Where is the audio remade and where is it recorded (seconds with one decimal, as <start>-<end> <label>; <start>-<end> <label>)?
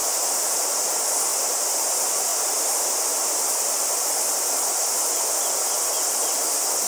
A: 0.0-0.5 remade; 0.5-2.3 recorded; 2.3-5.9 remade; 5.9-6.9 recorded